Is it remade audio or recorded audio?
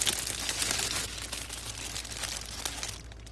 recorded